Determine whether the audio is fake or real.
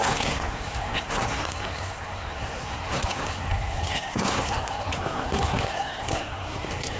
fake